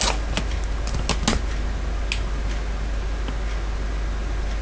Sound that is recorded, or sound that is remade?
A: recorded